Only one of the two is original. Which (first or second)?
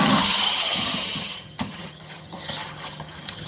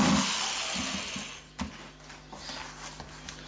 second